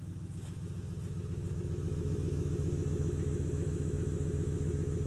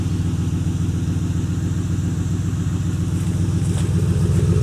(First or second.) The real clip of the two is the second